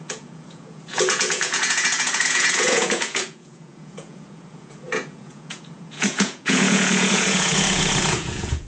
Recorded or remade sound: remade